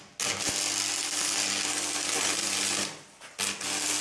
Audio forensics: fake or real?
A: real